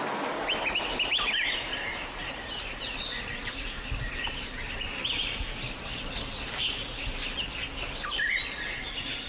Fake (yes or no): no